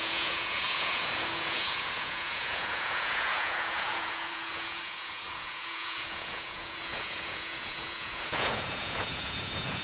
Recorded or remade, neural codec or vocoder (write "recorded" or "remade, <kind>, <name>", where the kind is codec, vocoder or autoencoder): remade, vocoder, Vocos